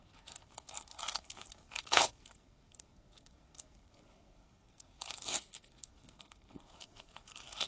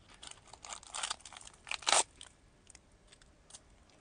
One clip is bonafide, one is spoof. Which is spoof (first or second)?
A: first